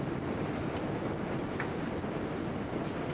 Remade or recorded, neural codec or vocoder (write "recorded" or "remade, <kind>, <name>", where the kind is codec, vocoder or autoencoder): recorded